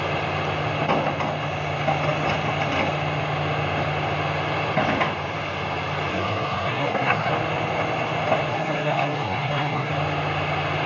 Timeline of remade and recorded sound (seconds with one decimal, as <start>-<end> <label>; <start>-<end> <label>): 0.0-6.1 recorded; 6.1-7.3 remade; 7.3-8.5 recorded; 8.5-9.9 remade; 9.9-10.9 recorded